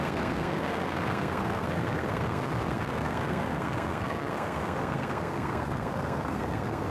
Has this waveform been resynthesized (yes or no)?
yes